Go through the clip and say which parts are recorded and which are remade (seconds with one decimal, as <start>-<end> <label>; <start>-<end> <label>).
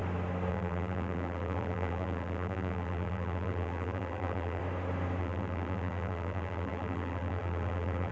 0.0-0.5 recorded; 0.5-4.6 remade; 4.6-5.2 recorded; 5.2-8.1 remade